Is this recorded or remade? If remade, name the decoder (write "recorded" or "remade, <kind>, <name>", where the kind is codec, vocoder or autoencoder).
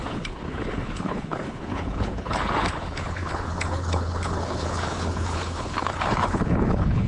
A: remade, codec, HILCodec